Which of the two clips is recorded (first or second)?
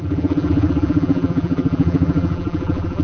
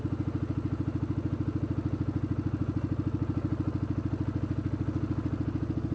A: second